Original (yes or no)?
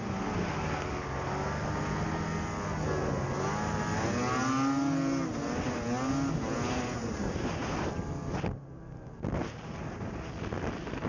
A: yes